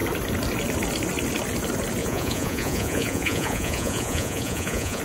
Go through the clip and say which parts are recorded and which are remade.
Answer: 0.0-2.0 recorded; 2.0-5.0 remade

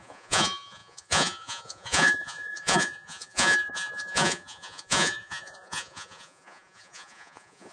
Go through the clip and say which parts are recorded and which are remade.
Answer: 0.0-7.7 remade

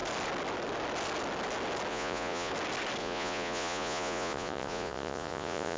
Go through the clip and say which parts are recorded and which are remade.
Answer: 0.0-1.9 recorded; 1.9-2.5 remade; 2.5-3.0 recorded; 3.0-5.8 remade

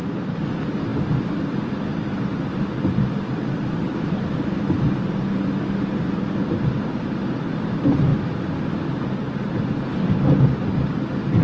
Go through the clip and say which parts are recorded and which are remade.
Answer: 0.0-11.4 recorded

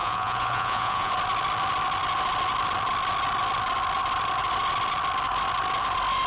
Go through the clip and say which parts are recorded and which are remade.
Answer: 0.0-1.1 remade; 1.1-6.3 recorded